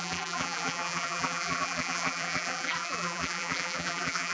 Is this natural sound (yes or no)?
no